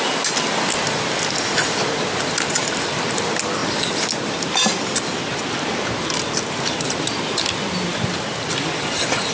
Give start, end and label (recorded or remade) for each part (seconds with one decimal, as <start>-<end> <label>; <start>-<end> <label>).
0.0-9.3 recorded